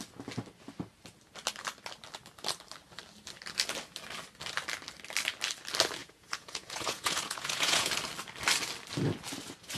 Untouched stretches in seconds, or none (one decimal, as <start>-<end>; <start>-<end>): 0.0-6.0; 7.9-9.8